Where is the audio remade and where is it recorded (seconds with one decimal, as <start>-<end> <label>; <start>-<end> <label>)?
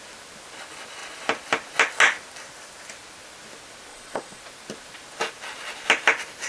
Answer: 0.0-3.9 recorded; 3.9-4.4 remade; 4.4-6.5 recorded